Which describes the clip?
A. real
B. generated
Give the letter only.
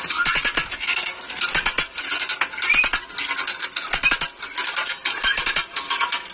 A